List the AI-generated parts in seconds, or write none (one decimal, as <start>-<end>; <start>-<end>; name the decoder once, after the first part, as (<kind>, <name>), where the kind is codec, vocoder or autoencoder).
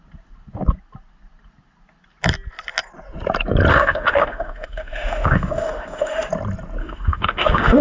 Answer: 3.7-6.3 (autoencoder, DAC-VAE); 6.8-7.8